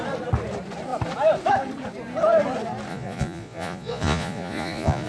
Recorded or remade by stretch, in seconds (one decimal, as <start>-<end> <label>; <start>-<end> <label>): 0.0-2.9 recorded; 2.9-5.1 remade